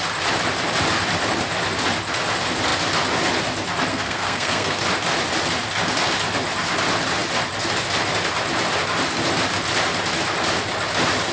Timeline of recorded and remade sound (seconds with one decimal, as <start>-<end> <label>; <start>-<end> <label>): 0.0-3.9 recorded; 3.9-4.8 remade; 4.8-11.3 recorded